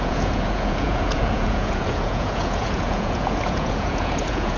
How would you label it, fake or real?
fake